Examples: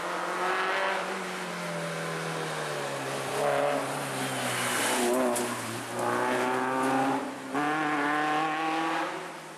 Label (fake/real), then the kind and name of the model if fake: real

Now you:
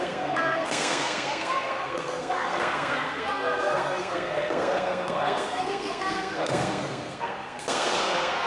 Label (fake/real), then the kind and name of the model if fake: fake, codec, SNAC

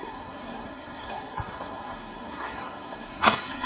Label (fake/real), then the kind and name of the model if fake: fake, codec, SNAC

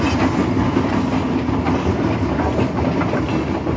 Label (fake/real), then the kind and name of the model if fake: real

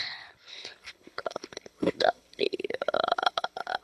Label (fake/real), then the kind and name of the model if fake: fake, codec, HILCodec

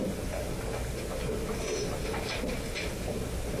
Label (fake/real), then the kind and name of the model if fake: real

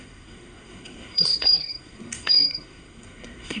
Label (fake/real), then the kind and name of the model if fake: fake, codec, SNAC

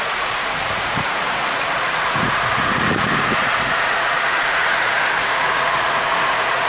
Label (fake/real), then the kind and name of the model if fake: fake, vocoder, Vocos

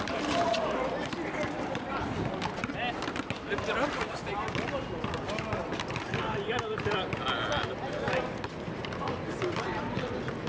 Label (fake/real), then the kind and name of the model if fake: real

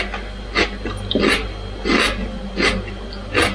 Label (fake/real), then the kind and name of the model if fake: real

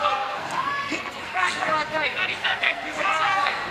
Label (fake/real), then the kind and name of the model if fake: fake, codec, SNAC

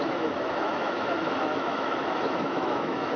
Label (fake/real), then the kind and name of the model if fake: fake, autoencoder, DAC-VAE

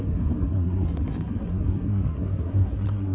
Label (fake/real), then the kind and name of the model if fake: fake, codec, SNAC